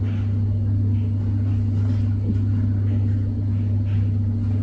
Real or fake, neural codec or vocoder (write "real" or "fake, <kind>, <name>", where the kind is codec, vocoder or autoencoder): real